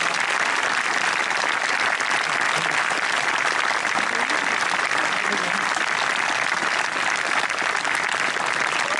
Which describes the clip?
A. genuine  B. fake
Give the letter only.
A